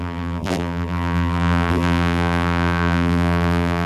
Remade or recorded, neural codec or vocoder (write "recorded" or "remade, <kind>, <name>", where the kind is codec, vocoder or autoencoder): remade, vocoder, BigVGAN v2